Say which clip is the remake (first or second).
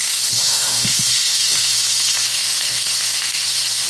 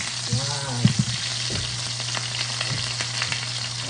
first